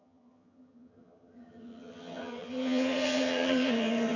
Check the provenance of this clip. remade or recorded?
remade